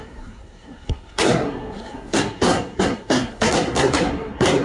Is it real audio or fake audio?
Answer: fake